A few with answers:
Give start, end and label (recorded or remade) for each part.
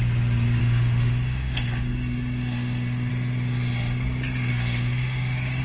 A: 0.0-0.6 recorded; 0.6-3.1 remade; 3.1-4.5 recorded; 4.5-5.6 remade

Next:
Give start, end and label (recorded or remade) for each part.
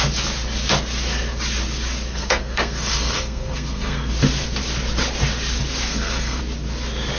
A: 0.0-2.1 recorded; 2.1-4.1 remade; 4.1-5.9 recorded; 5.9-6.4 remade; 6.4-7.2 recorded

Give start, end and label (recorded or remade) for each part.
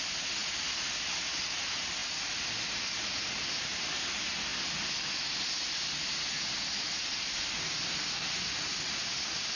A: 0.0-9.5 recorded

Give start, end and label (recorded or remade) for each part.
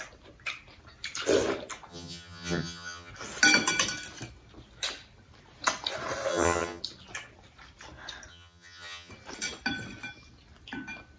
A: 0.0-1.9 recorded; 1.9-3.1 remade; 3.1-6.3 recorded; 6.3-6.8 remade; 6.8-8.3 recorded; 8.3-9.1 remade; 9.1-11.2 recorded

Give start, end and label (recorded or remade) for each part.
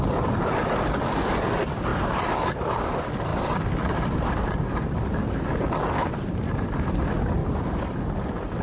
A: 0.0-8.6 recorded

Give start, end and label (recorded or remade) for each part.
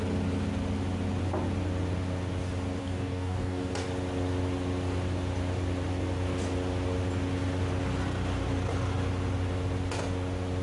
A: 0.0-2.8 recorded; 2.8-3.7 remade; 3.7-10.6 recorded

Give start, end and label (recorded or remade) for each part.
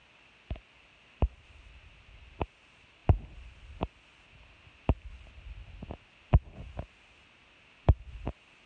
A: 0.0-0.8 recorded; 0.8-3.0 remade; 3.0-8.0 recorded; 8.0-8.7 remade